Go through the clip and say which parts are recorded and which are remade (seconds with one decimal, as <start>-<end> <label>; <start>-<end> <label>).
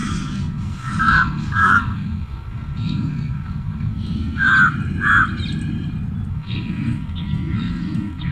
0.0-4.5 remade; 4.5-6.3 recorded; 6.3-8.3 remade